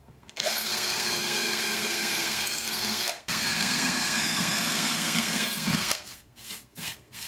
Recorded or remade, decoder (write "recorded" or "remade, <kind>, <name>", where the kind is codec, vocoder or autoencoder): remade, codec, SNAC